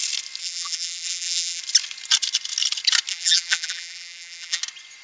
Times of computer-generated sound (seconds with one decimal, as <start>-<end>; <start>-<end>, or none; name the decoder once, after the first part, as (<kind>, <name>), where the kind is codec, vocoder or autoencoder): 0.4-1.6 (vocoder, BigVGAN v2); 3.1-4.6

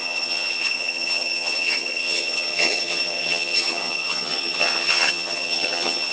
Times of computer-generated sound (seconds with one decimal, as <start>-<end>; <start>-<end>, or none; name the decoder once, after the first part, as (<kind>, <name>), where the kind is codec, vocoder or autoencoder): 0.0-6.1 (vocoder, HiFi-GAN)

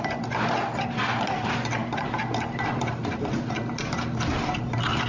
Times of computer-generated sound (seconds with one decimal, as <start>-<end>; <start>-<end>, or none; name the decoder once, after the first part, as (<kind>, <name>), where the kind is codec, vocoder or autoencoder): none

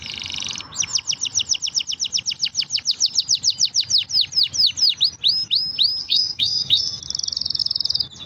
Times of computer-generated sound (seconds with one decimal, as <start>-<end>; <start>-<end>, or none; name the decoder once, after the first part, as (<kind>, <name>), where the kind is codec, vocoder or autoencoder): 6.0-7.0 (codec, SNAC)

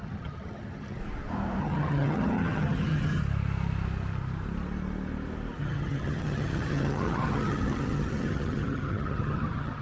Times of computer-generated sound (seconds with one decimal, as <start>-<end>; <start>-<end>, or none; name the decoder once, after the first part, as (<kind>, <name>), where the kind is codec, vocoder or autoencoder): 0.0-1.0 (vocoder, HiFi-GAN); 1.6-3.2; 5.6-9.8

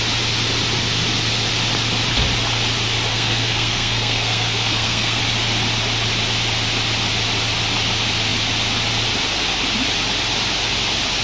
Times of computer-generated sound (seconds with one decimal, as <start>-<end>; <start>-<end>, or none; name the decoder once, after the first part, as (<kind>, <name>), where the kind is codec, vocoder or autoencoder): 3.1-5.2 (codec, SNAC)

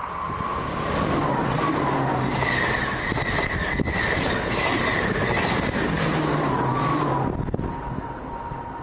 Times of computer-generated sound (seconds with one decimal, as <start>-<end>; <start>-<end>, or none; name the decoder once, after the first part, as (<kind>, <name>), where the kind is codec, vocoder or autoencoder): none

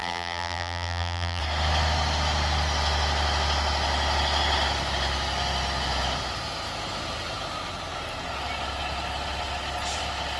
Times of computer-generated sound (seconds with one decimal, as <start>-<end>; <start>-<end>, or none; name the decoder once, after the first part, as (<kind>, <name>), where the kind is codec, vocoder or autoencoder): 0.0-1.4 (vocoder, BigVGAN v2)